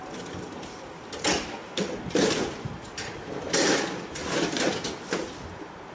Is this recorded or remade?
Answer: remade